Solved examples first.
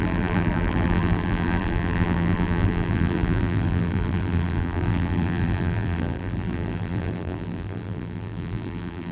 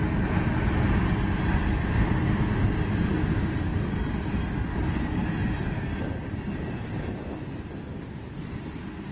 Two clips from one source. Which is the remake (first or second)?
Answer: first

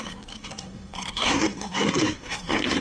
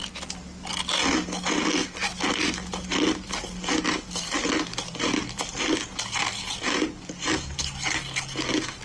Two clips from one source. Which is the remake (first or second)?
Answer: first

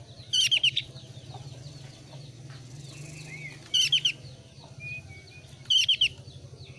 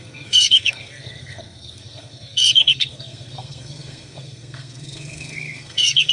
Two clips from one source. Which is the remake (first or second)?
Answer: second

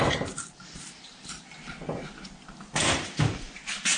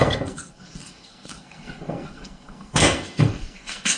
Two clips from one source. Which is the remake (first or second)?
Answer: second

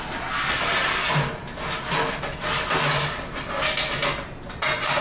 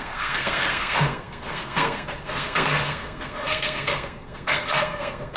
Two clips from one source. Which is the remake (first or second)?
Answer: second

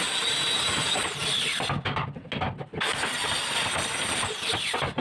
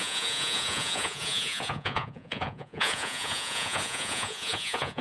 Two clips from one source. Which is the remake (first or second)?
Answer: second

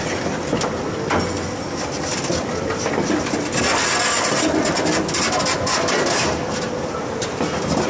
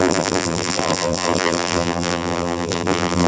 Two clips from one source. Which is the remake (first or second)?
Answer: second